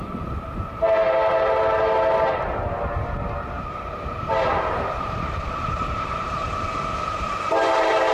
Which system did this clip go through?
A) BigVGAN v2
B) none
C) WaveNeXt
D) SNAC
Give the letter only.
A